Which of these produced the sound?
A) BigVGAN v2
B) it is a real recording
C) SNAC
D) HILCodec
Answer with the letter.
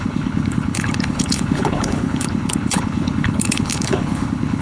D